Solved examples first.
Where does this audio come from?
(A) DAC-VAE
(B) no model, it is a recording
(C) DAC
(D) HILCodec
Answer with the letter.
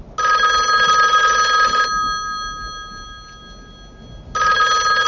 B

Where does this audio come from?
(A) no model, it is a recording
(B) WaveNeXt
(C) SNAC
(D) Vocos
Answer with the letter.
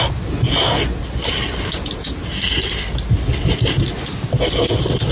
A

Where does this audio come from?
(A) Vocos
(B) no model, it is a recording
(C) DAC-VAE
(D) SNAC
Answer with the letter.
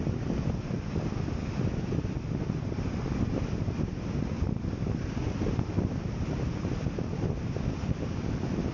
B